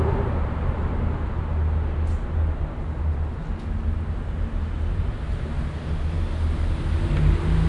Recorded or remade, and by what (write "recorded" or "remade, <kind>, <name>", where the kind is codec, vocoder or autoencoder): recorded